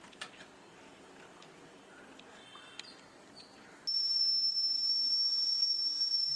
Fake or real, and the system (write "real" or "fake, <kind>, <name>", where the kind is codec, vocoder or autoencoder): real